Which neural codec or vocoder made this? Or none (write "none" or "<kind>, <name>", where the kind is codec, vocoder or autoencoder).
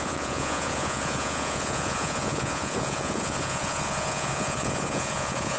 vocoder, Vocos